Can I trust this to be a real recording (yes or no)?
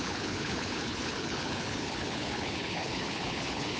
no